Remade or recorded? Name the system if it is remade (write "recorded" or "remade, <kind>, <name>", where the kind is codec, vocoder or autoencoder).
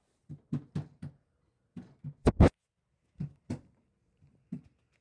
recorded